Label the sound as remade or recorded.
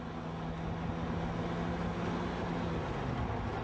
recorded